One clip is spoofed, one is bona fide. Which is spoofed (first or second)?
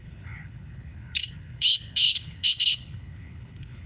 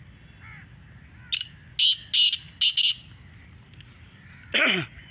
first